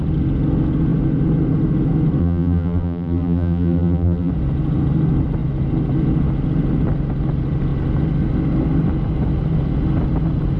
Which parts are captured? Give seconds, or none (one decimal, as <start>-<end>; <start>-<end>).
0.0-2.2; 4.3-10.6